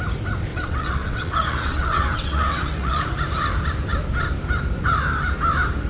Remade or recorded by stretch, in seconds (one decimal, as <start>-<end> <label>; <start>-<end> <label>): 0.0-0.5 recorded; 0.5-3.0 remade; 3.0-5.9 recorded

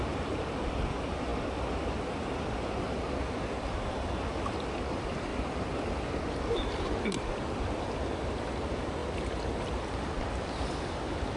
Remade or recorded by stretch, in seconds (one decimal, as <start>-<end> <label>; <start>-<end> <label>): 0.0-1.3 remade; 1.3-2.7 recorded; 2.7-5.3 remade; 5.3-7.3 recorded; 7.3-9.0 remade; 9.0-9.7 recorded; 9.7-11.4 remade

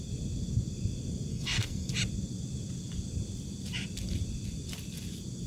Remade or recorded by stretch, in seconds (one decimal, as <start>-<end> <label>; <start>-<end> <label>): 0.0-1.3 recorded; 1.3-1.9 remade; 1.9-5.5 recorded

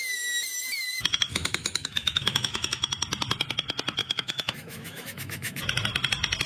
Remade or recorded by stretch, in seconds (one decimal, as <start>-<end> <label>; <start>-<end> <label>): 0.0-1.3 recorded; 1.3-2.9 remade; 2.9-4.0 recorded; 4.0-5.6 remade; 5.6-6.5 recorded

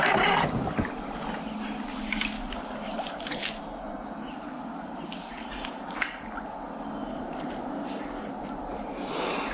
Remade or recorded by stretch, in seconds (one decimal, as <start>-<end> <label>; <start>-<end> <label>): 0.0-3.6 recorded; 3.6-4.3 remade; 4.3-9.5 recorded

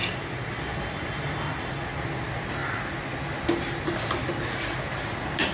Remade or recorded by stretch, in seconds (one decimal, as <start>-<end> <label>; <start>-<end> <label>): 0.0-5.5 recorded